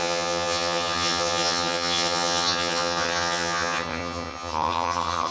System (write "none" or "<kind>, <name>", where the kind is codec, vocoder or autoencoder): vocoder, HiFi-GAN